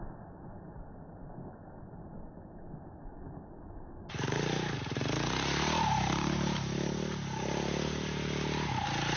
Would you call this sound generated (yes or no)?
no